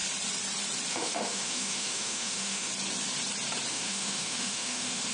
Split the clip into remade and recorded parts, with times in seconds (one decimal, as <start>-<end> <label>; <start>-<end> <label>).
0.0-0.9 recorded; 0.9-2.7 remade; 2.7-3.7 recorded; 3.7-5.1 remade